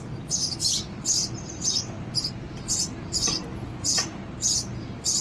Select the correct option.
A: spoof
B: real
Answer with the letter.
B